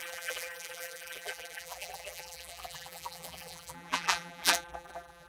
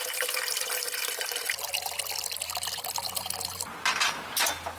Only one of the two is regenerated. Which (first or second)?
first